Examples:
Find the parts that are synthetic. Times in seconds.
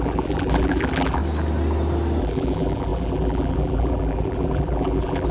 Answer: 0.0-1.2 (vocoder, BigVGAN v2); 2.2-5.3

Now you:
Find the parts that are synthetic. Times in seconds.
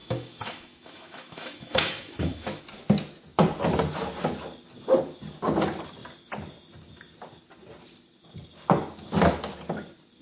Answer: 0.0-2.6 (autoencoder, DAC-VAE)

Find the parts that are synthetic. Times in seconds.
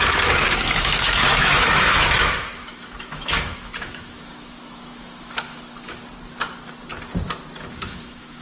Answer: 0.0-6.0 (autoencoder, DAC-VAE); 7.7-8.4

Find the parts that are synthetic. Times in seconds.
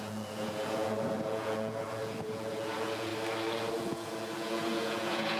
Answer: 0.0-3.1 (vocoder, Vocos); 3.7-5.4